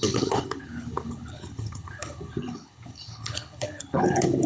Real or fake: fake